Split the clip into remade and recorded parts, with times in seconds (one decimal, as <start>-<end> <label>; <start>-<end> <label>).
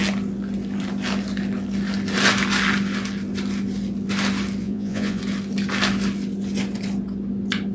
0.0-4.6 recorded; 4.6-5.2 remade; 5.2-7.7 recorded